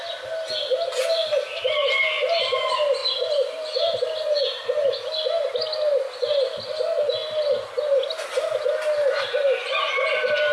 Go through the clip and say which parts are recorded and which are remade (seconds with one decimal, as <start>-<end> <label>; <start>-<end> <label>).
0.0-1.8 recorded; 1.8-2.4 remade; 2.4-3.0 recorded; 3.0-4.0 remade; 4.0-7.2 recorded; 7.2-10.1 remade; 10.1-10.5 recorded